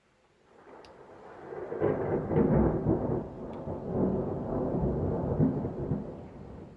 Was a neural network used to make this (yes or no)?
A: no